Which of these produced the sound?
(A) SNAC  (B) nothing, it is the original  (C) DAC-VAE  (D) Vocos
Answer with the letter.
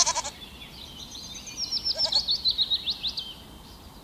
B